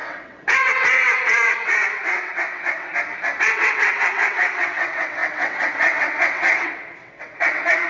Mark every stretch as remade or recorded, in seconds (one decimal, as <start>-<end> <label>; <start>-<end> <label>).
0.0-2.9 remade; 2.9-3.4 recorded; 3.4-7.9 remade